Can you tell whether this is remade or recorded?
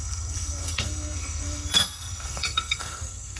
remade